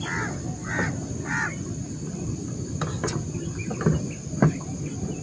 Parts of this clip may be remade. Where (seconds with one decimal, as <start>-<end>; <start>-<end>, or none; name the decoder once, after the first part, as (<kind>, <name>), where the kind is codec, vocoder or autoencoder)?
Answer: 0.6-2.7 (vocoder, BigVGAN v2); 3.6-4.6